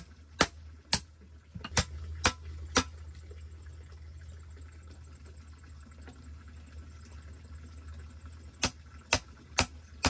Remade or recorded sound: recorded